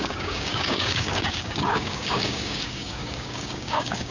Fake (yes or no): yes